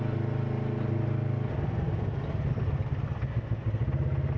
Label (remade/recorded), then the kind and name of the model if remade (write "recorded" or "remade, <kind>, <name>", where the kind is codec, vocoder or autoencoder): recorded